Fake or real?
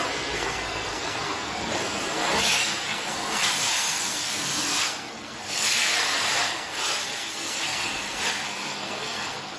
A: fake